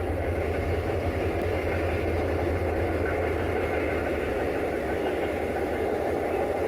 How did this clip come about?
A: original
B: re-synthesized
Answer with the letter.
A